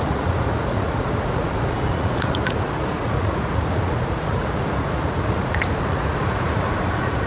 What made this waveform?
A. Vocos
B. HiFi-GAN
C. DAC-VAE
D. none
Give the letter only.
A